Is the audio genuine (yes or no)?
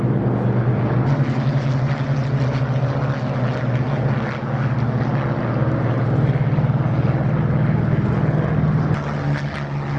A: yes